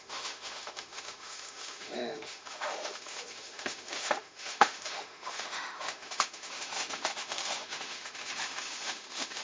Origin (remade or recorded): remade